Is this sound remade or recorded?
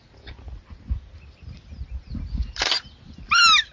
recorded